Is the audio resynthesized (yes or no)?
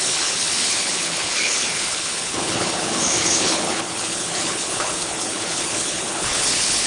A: yes